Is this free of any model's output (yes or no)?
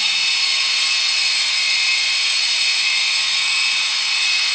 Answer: no